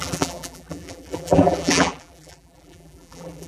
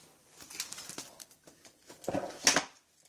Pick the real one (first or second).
second